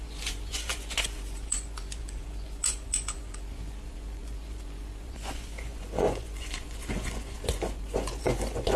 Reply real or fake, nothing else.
fake